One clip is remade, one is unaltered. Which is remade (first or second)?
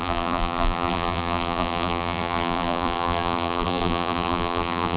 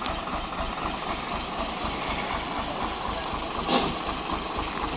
first